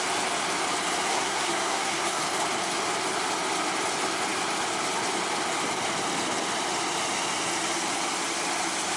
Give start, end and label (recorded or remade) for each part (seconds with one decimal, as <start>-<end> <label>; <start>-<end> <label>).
0.0-1.1 recorded; 1.1-2.2 remade; 2.2-9.0 recorded